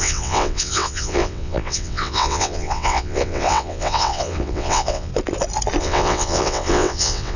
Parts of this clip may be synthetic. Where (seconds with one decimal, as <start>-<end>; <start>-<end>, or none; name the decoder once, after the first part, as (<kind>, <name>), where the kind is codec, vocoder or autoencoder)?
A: 0.0-5.1 (vocoder, WaveNeXt); 5.8-7.4